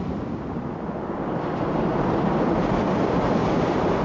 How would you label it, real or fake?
real